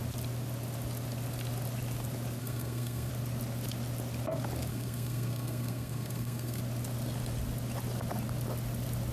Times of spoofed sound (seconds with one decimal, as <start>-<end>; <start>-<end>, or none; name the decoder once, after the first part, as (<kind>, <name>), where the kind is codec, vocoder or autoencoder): 2.4-3.1 (codec, SNAC); 4.7-6.6